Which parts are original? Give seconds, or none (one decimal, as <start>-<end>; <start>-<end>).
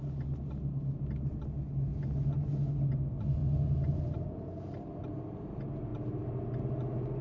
0.0-7.2